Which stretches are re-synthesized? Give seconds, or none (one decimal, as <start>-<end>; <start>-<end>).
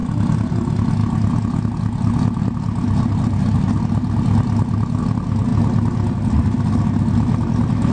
none